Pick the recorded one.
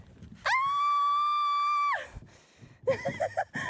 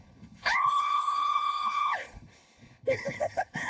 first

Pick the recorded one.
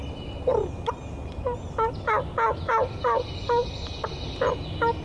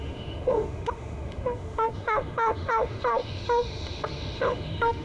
first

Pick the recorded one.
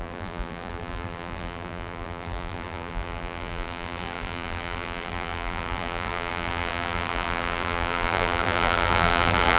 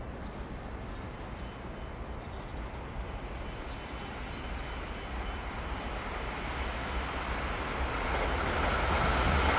second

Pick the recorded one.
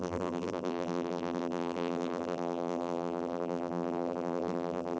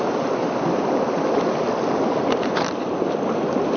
second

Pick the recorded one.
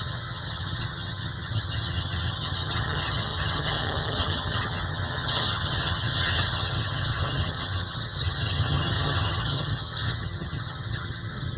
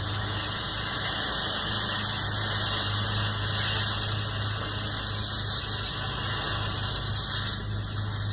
second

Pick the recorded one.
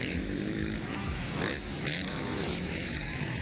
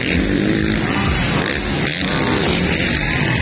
second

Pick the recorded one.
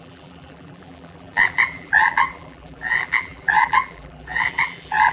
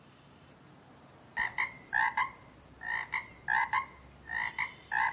second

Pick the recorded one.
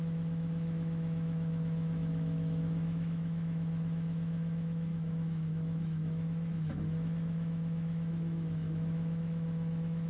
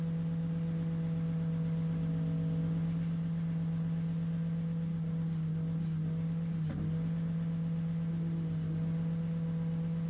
second